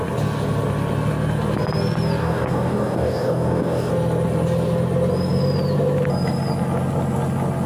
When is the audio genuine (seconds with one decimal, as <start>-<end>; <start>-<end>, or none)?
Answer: 0.0-2.2; 3.9-7.7